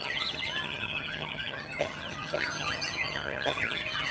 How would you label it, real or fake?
fake